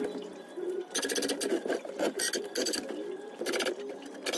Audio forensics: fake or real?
real